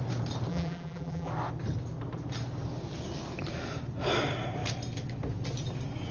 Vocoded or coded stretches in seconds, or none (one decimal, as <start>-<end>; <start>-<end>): 0.5-1.3